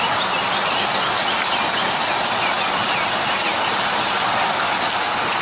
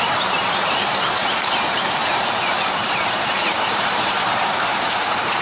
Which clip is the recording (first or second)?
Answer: first